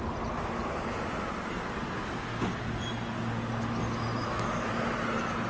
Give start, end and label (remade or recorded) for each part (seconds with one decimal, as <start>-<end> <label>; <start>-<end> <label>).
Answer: 0.0-4.1 recorded; 4.1-4.7 remade; 4.7-5.5 recorded